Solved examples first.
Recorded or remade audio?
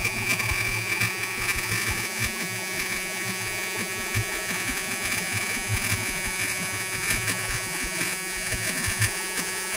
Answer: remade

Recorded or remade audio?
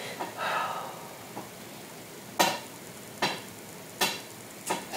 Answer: recorded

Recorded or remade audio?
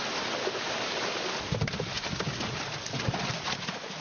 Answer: recorded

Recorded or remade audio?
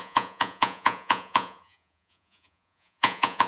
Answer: remade